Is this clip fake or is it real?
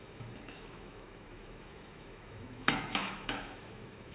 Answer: fake